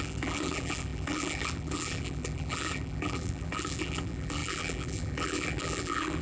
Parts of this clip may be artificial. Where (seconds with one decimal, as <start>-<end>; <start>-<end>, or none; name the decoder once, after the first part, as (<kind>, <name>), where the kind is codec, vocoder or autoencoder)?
0.0-6.2 (vocoder, BigVGAN v2)

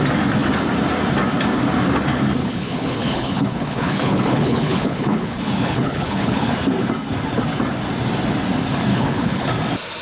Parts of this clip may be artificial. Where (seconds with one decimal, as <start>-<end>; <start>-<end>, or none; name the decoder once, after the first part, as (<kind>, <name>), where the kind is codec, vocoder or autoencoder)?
2.4-6.5 (codec, HILCodec); 8.9-9.5

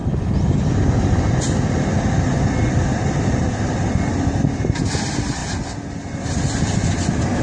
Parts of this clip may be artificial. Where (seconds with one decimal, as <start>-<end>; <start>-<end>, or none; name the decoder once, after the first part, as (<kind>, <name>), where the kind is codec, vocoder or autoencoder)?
2.7-5.4 (vocoder, BigVGAN v2)

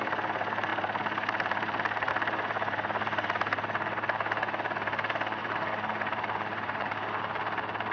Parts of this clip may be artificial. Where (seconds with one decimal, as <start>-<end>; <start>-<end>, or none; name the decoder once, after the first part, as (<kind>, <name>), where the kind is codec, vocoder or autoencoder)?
0.7-2.1 (vocoder, BigVGAN v2); 5.4-7.2

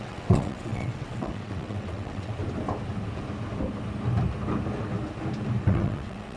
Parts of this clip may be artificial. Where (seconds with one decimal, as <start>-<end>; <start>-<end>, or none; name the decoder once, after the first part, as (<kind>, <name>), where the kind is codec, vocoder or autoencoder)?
0.0-2.4 (vocoder, WaveNeXt); 5.6-6.4

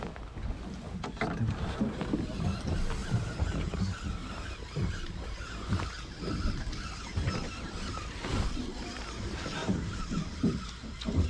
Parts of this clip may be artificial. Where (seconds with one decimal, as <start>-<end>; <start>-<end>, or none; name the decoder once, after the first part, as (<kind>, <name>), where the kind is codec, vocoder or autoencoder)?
3.0-5.7 (vocoder, BigVGAN v2); 8.3-8.9; 9.6-10.6